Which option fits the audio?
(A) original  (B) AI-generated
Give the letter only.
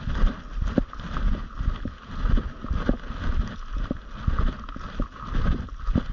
A